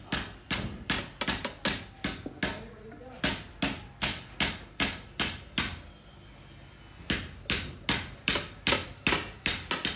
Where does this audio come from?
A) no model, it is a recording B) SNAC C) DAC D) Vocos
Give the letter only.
A